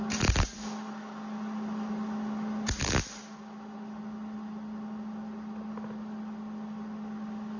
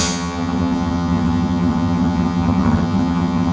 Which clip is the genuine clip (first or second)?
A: first